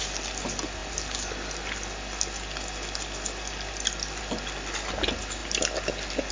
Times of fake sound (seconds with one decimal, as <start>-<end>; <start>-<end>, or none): none